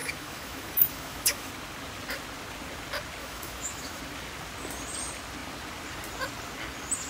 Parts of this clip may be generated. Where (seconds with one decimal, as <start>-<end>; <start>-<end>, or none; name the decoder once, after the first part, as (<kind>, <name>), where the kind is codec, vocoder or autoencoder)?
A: 0.0-1.5 (autoencoder, DAC-VAE); 3.2-4.0